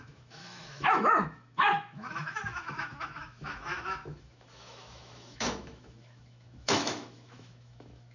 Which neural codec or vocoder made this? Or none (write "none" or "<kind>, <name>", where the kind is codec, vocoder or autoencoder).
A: autoencoder, DAC-VAE